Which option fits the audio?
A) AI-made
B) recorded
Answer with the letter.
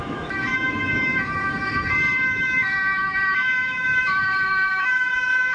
A